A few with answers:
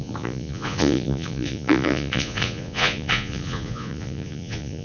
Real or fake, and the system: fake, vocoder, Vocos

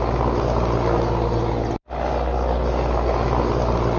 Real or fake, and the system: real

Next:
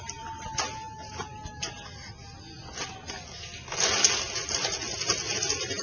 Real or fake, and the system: real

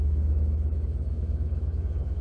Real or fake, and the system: fake, autoencoder, DAC-VAE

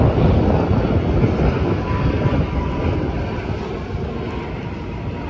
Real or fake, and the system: real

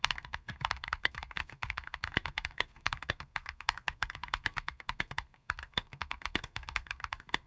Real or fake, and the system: fake, codec, SNAC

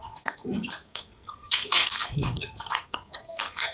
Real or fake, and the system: fake, codec, SNAC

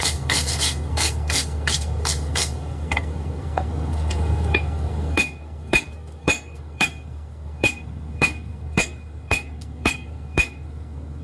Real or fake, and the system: fake, codec, SNAC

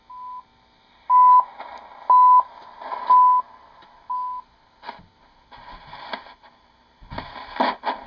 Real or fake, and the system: real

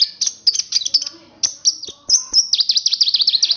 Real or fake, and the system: real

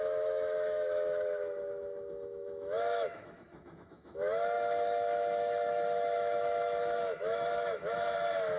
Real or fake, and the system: fake, autoencoder, DAC-VAE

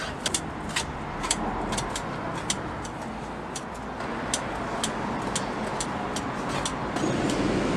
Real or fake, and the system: real